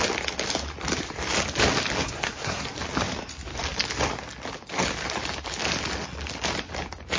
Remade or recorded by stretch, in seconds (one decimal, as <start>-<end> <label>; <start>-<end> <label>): 0.0-2.0 recorded; 2.0-2.8 remade; 2.8-7.2 recorded